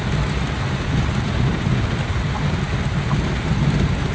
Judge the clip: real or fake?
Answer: real